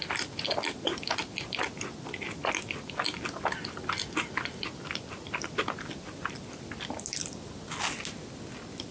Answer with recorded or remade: recorded